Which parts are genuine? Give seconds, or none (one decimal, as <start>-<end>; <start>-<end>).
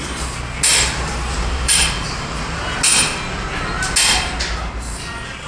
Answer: 0.0-0.7; 2.8-5.5